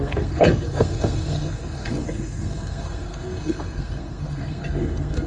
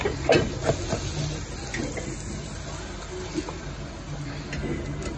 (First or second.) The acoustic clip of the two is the second